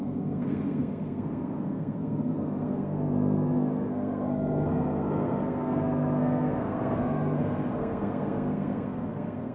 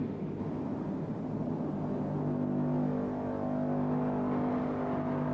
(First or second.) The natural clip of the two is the second